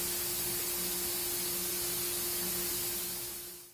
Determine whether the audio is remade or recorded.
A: recorded